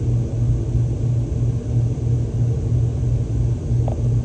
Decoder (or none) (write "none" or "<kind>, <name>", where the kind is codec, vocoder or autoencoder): none